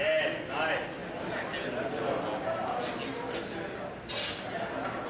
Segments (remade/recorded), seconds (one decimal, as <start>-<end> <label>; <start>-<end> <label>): 0.0-5.1 recorded